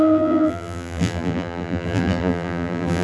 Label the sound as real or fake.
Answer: fake